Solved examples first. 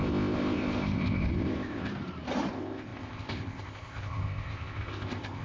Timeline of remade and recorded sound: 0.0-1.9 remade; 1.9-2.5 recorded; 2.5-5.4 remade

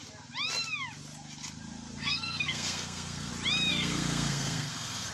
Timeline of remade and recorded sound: 0.0-2.0 recorded; 2.0-3.3 remade; 3.3-3.7 recorded; 3.7-5.1 remade